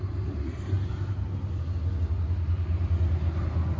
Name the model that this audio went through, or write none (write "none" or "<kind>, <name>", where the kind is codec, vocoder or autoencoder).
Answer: none